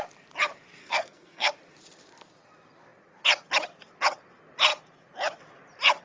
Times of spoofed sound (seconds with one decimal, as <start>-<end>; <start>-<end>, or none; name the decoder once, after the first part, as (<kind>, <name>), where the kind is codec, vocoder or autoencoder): 0.8-1.5 (codec, SNAC)

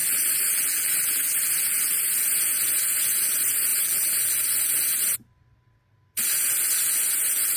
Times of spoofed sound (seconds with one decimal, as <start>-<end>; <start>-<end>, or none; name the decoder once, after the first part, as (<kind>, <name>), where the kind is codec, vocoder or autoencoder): 0.0-1.4 (vocoder, BigVGAN v2); 3.7-4.3

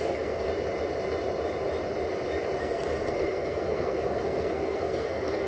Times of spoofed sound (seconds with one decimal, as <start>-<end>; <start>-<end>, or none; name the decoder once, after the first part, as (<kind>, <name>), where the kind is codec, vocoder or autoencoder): 0.0-0.5 (codec, SNAC); 2.6-5.5

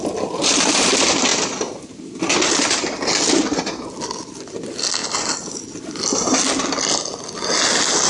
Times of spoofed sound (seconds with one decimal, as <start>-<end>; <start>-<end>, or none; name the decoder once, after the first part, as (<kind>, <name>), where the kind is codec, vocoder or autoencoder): none

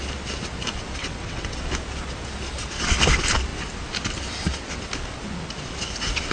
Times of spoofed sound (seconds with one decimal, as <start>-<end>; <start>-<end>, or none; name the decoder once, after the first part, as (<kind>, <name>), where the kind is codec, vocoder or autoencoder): 1.0-1.6 (vocoder, WaveNeXt)

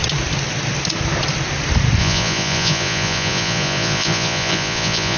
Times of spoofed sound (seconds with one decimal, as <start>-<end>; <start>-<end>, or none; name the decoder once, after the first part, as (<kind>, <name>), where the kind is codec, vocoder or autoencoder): 2.0-5.2 (vocoder, Vocos)

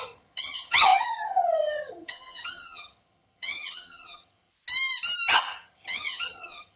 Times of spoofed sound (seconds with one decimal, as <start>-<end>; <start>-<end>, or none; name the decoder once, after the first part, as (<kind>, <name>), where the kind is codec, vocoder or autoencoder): 0.0-4.5 (vocoder, HiFi-GAN); 5.3-6.8

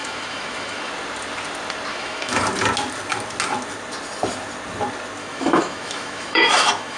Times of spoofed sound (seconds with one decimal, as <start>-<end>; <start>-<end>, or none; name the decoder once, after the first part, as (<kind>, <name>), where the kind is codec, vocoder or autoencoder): 0.0-0.9 (autoencoder, DAC-VAE); 1.9-2.4; 5.2-7.0